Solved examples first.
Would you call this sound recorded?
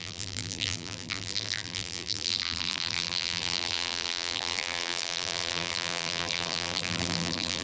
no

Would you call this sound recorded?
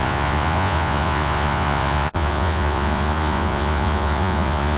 no